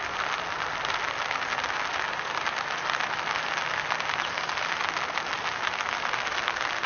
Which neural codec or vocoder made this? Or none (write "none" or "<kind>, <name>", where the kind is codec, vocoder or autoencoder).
none